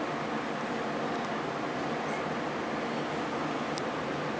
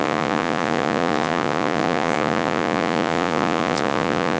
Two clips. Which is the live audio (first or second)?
first